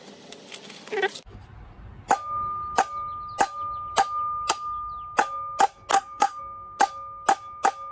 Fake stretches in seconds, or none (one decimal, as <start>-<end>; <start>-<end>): 5.9-6.4